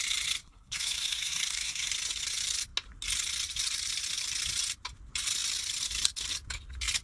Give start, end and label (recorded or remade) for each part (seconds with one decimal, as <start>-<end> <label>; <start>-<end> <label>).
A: 0.0-0.4 recorded; 0.4-1.9 remade; 1.9-7.0 recorded